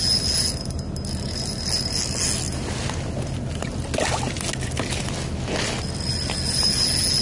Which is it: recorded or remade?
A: recorded